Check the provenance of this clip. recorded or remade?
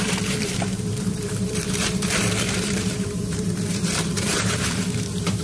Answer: remade